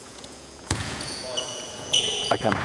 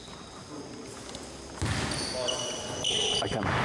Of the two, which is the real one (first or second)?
second